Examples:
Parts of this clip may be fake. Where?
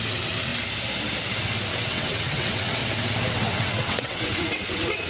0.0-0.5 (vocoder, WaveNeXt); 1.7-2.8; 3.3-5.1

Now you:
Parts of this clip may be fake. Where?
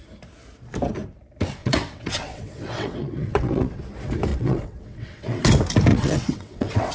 1.6-3.8 (vocoder, WaveNeXt); 4.3-5.4; 5.9-6.9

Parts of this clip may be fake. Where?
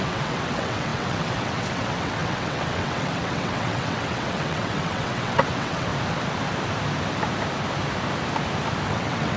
0.0-5.9 (vocoder, WaveNeXt); 8.9-9.4